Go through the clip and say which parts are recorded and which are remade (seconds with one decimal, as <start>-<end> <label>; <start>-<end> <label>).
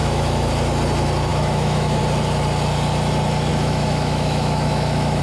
0.0-0.5 remade; 0.5-1.3 recorded; 1.3-2.0 remade; 2.0-3.5 recorded; 3.5-5.2 remade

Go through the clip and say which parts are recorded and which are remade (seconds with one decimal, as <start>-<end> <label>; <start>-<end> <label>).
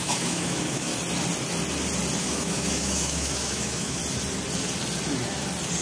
0.0-0.9 remade; 0.9-2.2 recorded; 2.2-4.0 remade; 4.0-5.8 recorded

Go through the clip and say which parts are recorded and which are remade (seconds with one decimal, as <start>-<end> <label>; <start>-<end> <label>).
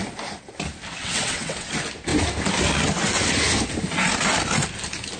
0.0-1.0 recorded; 1.0-1.7 remade; 1.7-5.2 recorded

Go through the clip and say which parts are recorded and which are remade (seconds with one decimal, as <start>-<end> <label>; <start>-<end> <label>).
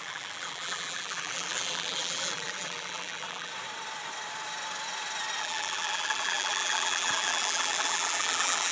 0.0-3.5 remade; 3.5-5.4 recorded; 5.4-8.7 remade